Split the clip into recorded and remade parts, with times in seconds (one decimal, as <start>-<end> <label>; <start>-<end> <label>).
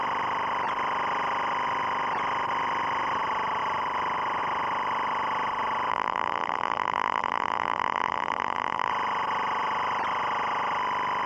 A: 0.0-5.9 recorded; 5.9-8.9 remade; 8.9-11.3 recorded